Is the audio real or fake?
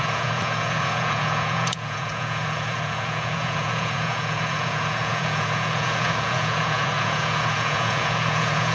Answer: fake